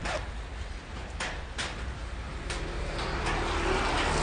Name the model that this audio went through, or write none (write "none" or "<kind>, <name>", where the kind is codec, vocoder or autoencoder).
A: none